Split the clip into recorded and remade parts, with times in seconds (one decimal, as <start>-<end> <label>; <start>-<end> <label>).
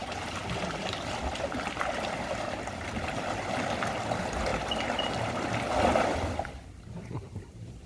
0.0-4.5 remade; 4.5-5.0 recorded; 5.0-7.9 remade